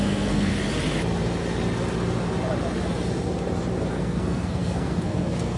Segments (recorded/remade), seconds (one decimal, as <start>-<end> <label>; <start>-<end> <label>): 0.0-0.5 remade; 0.5-3.9 recorded; 3.9-5.6 remade